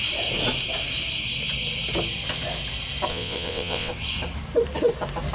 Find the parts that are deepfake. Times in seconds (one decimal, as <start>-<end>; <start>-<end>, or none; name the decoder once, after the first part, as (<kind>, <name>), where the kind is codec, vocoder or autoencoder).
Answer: 3.1-3.9 (vocoder, WaveNeXt)